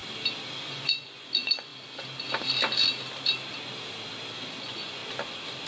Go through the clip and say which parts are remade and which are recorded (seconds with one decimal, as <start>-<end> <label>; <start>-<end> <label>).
0.0-0.6 recorded; 0.6-1.7 remade; 1.7-4.6 recorded; 4.6-5.0 remade; 5.0-5.7 recorded